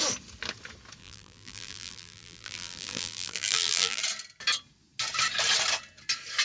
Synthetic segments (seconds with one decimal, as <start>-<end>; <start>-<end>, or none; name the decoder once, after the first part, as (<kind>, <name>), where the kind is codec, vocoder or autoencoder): 1.0-4.0 (vocoder, BigVGAN v2)